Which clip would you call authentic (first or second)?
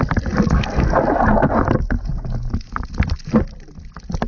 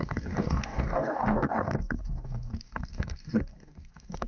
first